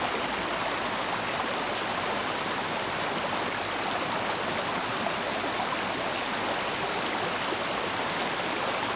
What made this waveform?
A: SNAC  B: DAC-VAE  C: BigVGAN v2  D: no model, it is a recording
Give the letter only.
D